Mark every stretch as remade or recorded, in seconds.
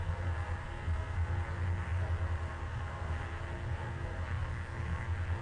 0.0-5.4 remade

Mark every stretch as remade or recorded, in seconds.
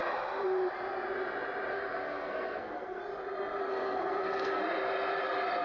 0.0-1.7 recorded; 1.7-3.0 remade; 3.0-3.6 recorded; 3.6-4.6 remade; 4.6-5.6 recorded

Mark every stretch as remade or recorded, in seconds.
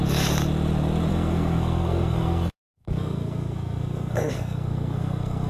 0.0-1.1 recorded; 1.1-5.5 remade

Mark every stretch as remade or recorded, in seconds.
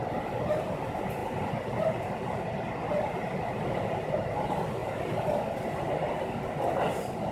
0.0-7.3 recorded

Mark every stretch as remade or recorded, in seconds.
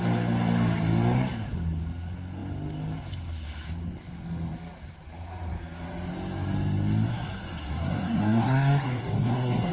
0.0-7.1 recorded; 7.1-9.7 remade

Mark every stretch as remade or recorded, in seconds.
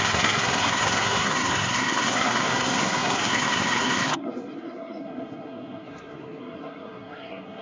0.0-7.6 remade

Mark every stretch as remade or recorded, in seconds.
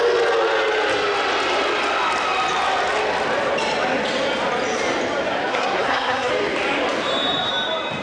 0.0-5.5 recorded; 5.5-6.3 remade; 6.3-8.0 recorded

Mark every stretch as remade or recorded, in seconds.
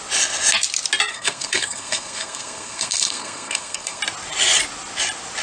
0.0-1.1 recorded; 1.1-4.0 remade; 4.0-5.4 recorded